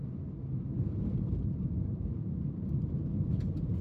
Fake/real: fake